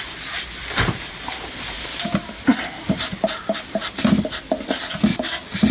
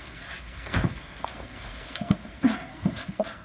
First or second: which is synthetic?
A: second